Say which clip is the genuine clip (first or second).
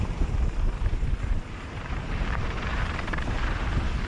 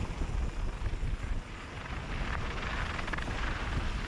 second